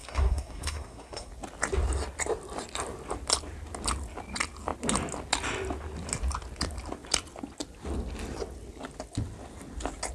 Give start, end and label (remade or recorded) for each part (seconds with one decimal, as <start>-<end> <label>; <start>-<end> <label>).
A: 0.0-1.3 remade; 1.3-10.1 recorded